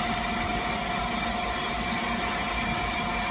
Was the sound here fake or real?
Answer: real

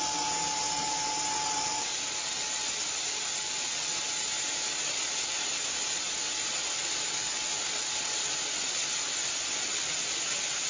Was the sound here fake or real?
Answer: real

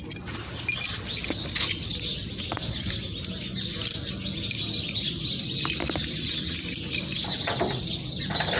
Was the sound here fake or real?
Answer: real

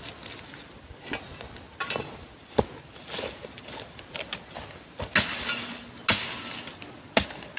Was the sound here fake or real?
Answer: real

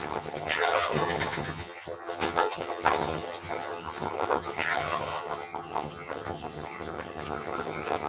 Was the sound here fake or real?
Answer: fake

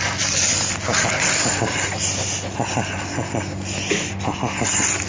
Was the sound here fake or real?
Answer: real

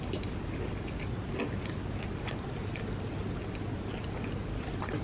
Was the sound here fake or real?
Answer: real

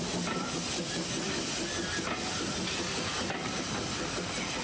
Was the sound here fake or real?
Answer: real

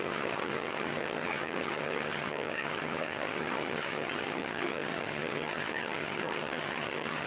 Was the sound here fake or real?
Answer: fake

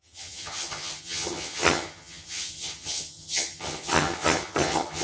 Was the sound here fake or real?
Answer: fake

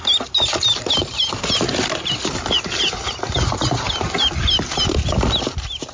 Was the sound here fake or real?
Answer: real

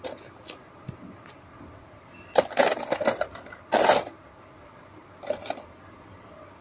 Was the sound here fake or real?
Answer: real